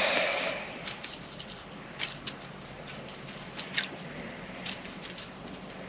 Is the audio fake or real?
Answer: fake